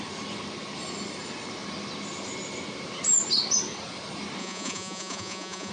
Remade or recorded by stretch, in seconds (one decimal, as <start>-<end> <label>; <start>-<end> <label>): 0.0-4.4 recorded; 4.4-5.7 remade